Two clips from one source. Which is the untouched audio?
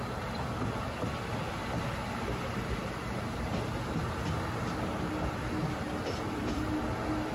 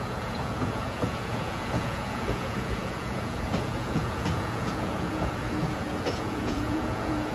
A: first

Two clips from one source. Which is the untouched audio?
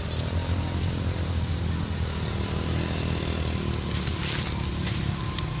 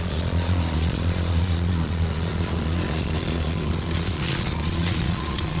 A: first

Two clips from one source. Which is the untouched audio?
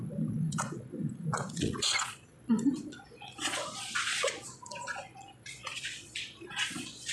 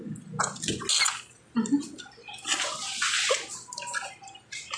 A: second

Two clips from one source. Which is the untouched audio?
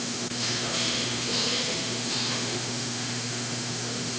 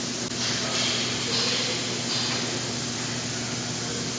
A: second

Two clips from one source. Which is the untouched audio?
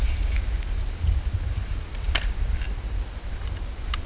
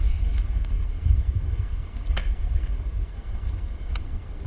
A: first